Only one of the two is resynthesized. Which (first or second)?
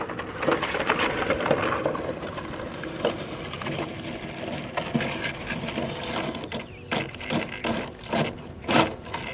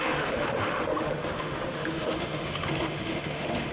second